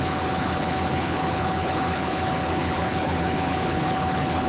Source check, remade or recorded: remade